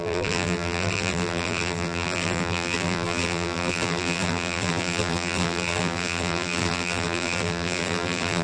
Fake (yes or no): yes